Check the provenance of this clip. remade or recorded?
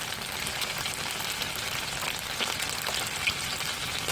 recorded